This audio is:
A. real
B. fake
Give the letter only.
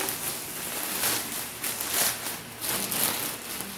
A